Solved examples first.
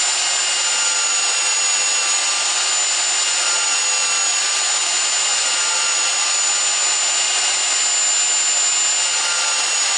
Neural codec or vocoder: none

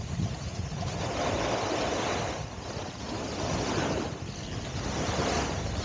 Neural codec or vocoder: none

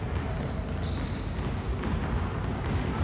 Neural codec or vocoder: none